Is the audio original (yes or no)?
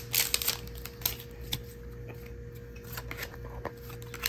yes